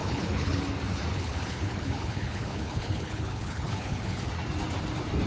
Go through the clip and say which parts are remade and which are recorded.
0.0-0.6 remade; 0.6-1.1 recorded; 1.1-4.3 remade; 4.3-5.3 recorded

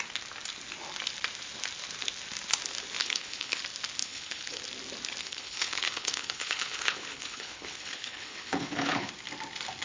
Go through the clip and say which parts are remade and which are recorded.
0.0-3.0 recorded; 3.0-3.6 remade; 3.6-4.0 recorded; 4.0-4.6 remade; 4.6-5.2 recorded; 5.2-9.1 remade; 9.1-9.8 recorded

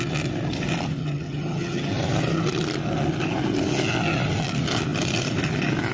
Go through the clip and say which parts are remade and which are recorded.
0.0-1.0 recorded; 1.0-1.9 remade; 1.9-5.9 recorded

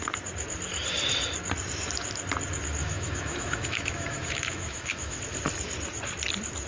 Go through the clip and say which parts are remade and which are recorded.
0.0-2.8 recorded; 2.8-5.2 remade; 5.2-6.7 recorded

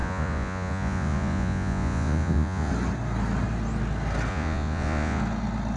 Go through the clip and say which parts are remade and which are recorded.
0.0-2.7 remade; 2.7-4.3 recorded; 4.3-5.2 remade; 5.2-5.8 recorded

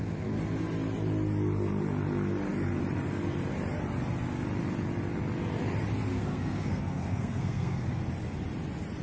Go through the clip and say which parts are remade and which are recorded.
0.0-6.1 recorded; 6.1-8.0 remade; 8.0-9.0 recorded